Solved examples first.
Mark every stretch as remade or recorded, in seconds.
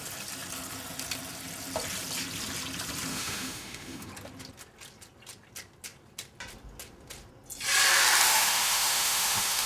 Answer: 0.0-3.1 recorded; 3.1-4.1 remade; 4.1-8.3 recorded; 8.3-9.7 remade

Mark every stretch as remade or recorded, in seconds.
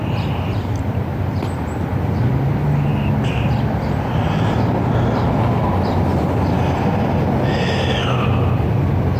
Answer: 0.0-9.2 recorded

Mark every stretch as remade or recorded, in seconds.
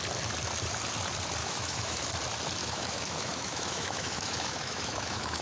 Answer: 0.0-1.4 recorded; 1.4-2.1 remade; 2.1-2.6 recorded; 2.6-5.4 remade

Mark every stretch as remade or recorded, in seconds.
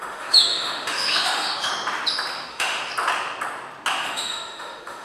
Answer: 0.0-1.7 remade; 1.7-2.5 recorded; 2.5-2.9 remade; 2.9-3.9 recorded; 3.9-5.0 remade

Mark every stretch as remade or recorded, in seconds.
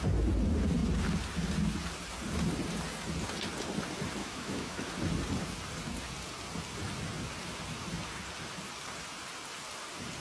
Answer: 0.0-4.2 recorded; 4.2-4.9 remade; 4.9-10.2 recorded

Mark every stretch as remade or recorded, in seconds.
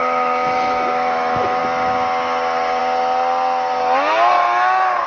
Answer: 0.0-1.6 remade; 1.6-5.1 recorded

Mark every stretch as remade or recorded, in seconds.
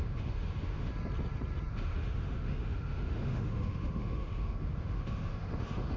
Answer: 0.0-0.9 remade; 0.9-1.7 recorded; 1.7-6.0 remade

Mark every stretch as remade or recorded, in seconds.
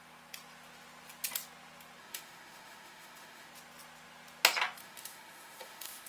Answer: 0.0-2.0 recorded; 2.0-3.5 remade; 3.5-4.8 recorded; 4.8-6.1 remade